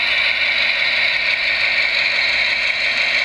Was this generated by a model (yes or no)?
no